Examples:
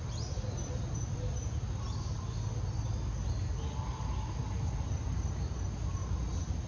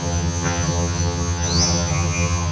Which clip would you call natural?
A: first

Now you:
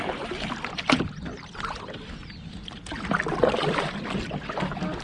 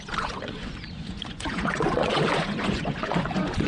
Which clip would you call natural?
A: first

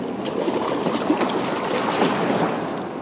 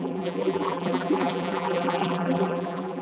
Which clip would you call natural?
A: first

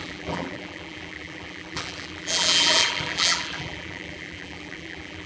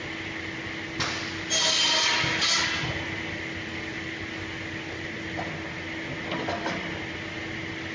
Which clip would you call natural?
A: second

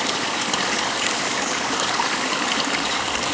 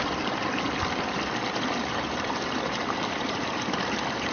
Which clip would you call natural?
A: second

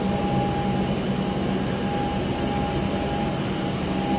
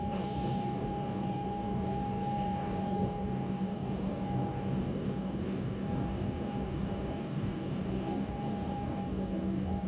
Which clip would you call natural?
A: first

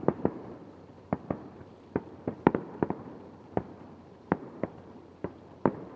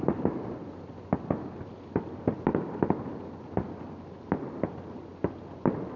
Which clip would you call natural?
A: second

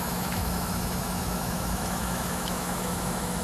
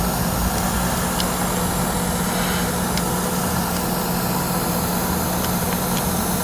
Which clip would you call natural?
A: second